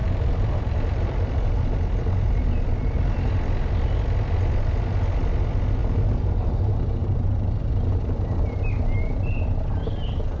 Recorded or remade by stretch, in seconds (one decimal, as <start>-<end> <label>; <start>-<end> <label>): 0.0-1.4 remade; 1.4-5.8 recorded; 5.8-6.5 remade; 6.5-7.0 recorded; 7.0-8.3 remade; 8.3-10.4 recorded